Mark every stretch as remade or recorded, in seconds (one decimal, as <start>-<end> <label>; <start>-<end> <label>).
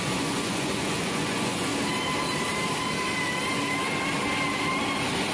0.0-1.7 remade; 1.7-5.3 recorded